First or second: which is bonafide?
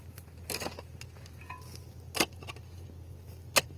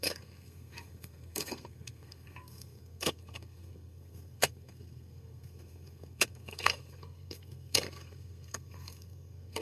first